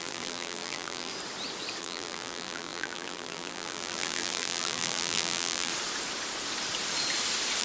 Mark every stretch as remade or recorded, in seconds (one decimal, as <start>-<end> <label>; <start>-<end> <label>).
0.0-1.1 remade; 1.1-1.8 recorded; 1.8-5.7 remade; 5.7-7.6 recorded